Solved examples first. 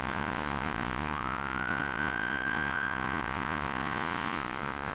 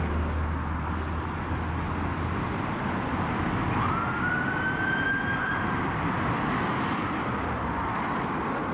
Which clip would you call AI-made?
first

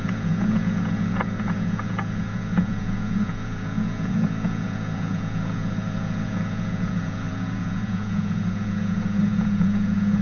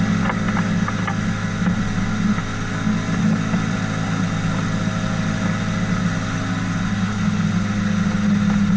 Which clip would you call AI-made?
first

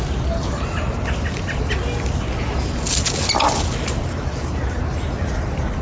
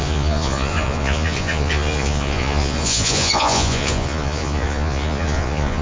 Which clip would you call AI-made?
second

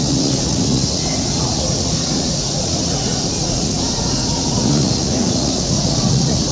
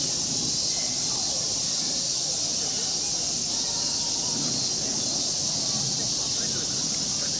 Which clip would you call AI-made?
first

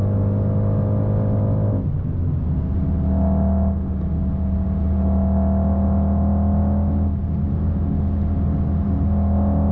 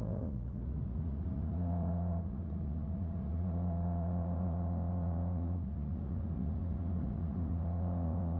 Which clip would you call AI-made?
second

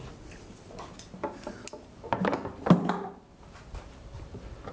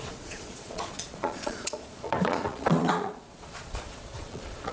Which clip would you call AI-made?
second